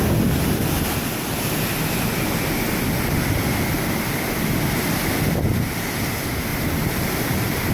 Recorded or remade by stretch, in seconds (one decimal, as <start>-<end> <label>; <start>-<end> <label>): 0.0-7.7 recorded